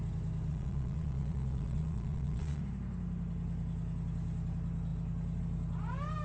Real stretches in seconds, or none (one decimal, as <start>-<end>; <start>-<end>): 0.0-0.5; 2.6-6.2